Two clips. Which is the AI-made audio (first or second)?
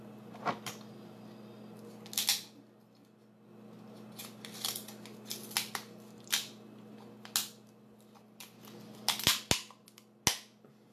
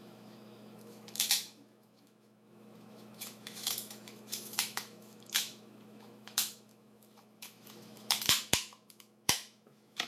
second